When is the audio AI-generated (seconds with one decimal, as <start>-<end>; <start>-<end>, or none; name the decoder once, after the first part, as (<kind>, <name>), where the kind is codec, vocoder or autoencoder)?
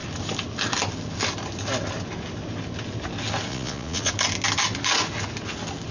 3.5-4.1 (vocoder, Vocos)